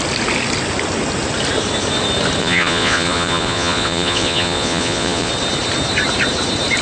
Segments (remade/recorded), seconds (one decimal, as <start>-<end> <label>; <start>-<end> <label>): 0.0-2.4 recorded; 2.4-5.3 remade; 5.3-6.8 recorded